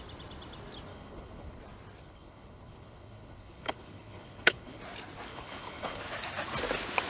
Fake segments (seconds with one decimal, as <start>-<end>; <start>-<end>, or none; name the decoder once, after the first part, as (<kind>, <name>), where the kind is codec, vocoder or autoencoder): 0.9-1.6 (codec, HILCodec); 2.0-4.8; 5.3-6.0